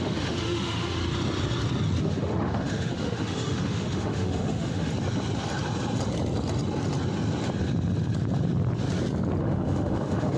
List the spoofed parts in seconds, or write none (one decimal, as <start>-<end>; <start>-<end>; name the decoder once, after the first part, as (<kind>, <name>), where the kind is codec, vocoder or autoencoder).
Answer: 0.0-1.0 (autoencoder, DAC-VAE); 2.0-4.9; 9.4-10.4